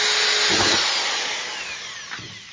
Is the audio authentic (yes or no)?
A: yes